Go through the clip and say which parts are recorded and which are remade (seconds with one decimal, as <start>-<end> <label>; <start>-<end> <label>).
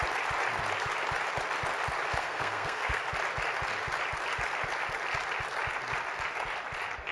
0.0-2.2 recorded; 2.2-3.0 remade; 3.0-7.1 recorded